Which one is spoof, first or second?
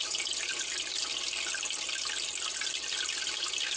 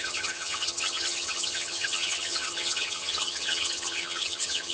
second